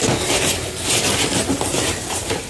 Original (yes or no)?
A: yes